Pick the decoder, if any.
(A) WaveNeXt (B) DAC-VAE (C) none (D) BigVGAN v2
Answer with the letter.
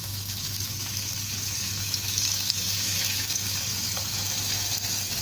B